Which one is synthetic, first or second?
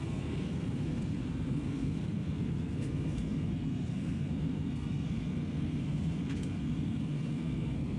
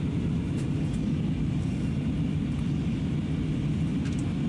first